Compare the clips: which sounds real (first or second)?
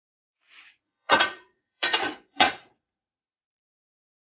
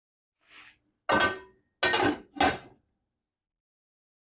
second